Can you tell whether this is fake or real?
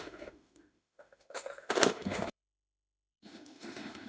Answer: fake